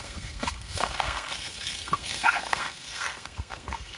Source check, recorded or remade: remade